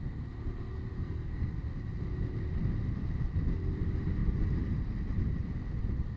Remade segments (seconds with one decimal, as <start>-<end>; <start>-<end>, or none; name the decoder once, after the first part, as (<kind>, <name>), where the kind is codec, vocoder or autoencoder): 0.9-1.6 (codec, SNAC)